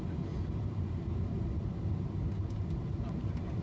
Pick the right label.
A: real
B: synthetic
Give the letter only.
A